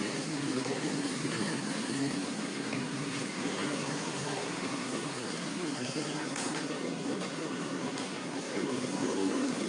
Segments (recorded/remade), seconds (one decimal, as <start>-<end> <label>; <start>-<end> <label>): 0.0-9.7 remade